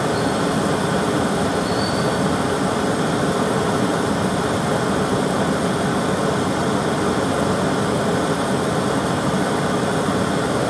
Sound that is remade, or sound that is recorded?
recorded